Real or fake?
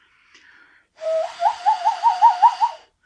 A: fake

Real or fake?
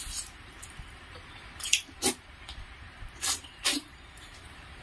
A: fake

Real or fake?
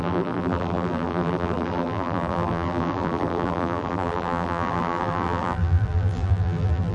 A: fake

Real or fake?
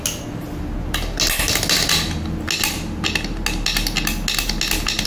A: real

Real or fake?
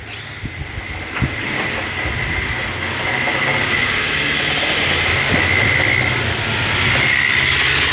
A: real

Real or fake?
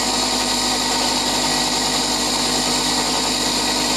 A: real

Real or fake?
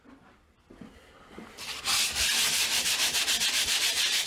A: real